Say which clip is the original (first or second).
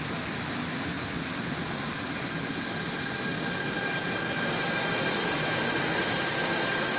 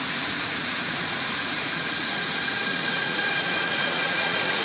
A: first